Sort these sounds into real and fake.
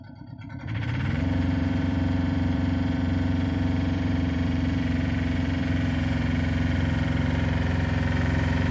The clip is fake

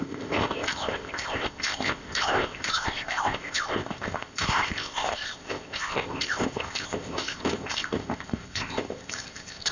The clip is fake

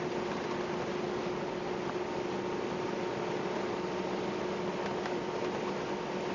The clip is real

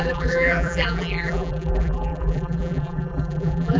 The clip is fake